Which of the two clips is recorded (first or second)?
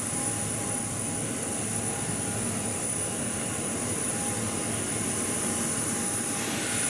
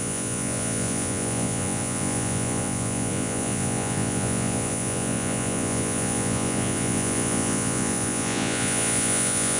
first